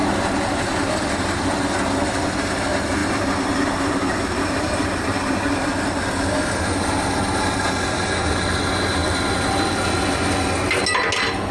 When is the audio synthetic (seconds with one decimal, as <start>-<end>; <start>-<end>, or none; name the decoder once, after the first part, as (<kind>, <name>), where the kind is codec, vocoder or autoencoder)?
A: 0.0-1.4 (vocoder, BigVGAN v2); 3.0-6.1